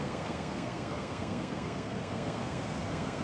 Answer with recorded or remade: remade